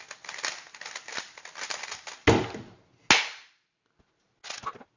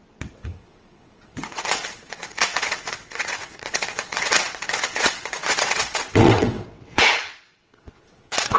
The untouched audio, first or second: first